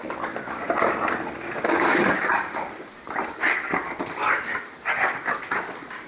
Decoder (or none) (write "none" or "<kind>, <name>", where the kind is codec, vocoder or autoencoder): none